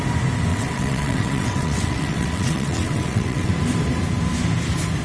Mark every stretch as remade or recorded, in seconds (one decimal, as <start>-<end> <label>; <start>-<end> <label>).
0.0-0.5 recorded; 0.5-3.5 remade; 3.5-5.0 recorded